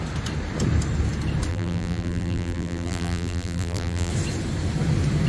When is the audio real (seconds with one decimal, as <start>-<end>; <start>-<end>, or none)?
0.0-1.5; 4.1-5.3